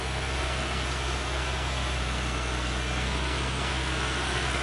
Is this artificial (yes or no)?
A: yes